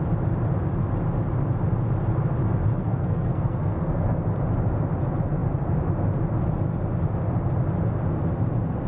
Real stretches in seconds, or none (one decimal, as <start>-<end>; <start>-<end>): 0.0-2.8; 4.2-8.9